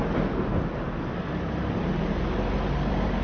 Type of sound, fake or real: real